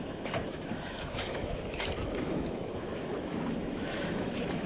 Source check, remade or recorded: remade